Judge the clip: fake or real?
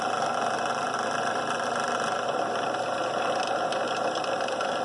real